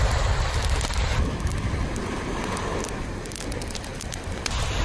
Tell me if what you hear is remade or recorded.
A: recorded